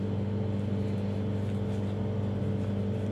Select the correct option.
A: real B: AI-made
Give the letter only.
A